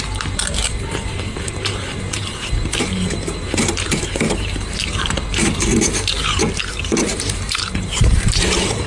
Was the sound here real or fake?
fake